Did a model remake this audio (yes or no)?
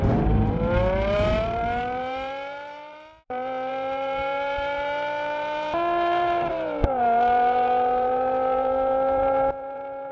yes